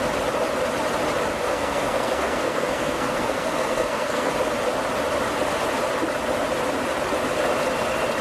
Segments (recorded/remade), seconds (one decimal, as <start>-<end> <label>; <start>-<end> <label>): 0.0-1.3 recorded; 1.3-4.3 remade; 4.3-8.2 recorded